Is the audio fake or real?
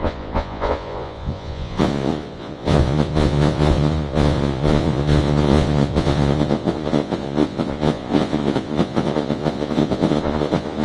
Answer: fake